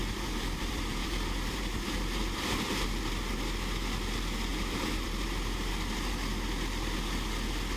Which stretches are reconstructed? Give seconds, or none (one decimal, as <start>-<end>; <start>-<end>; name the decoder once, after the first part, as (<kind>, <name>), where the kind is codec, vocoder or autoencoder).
0.0-3.1 (vocoder, BigVGAN v2); 4.5-5.7